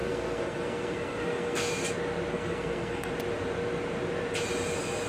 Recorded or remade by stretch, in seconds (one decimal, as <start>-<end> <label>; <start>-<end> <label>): 0.0-1.7 remade; 1.7-2.3 recorded; 2.3-3.1 remade; 3.1-5.1 recorded